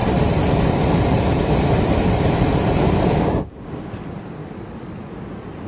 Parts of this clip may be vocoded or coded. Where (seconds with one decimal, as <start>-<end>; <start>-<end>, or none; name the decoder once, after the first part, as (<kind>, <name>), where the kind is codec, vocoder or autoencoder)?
0.0-3.4 (vocoder, BigVGAN v2)